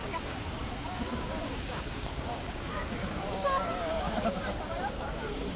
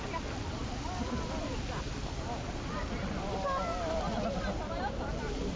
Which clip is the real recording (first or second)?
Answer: second